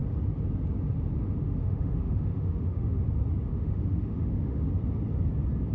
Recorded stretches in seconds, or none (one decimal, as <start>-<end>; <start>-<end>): 0.0-1.4; 3.0-3.5; 4.7-5.7